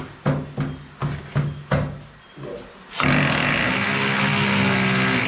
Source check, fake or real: real